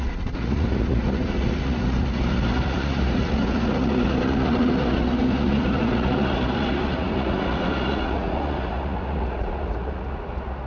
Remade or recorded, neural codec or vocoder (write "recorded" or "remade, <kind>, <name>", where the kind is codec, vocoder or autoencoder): remade, vocoder, Vocos